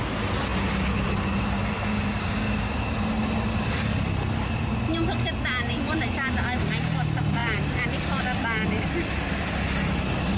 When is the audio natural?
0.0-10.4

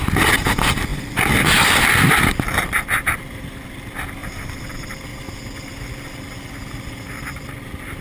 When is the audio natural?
0.0-0.9; 2.1-4.2; 5.2-8.0

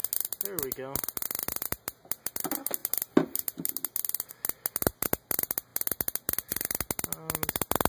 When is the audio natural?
0.0-7.9

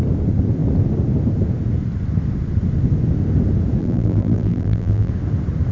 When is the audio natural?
0.0-3.8; 5.1-5.7

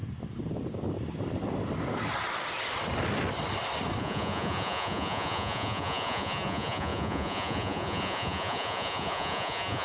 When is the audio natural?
0.0-4.0

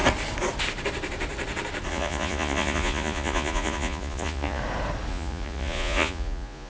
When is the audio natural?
0.0-1.9; 4.6-5.1

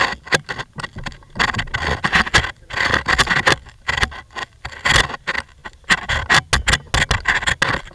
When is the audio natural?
0.0-7.9

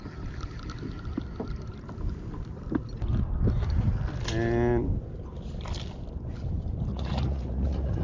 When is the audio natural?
0.0-6.9